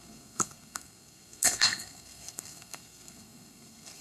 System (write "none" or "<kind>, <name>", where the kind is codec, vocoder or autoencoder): codec, SNAC